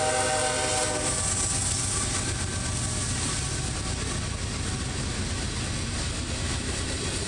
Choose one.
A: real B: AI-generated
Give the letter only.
A